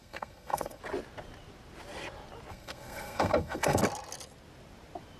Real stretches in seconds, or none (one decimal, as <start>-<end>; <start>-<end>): 0.8-2.5; 3.8-5.2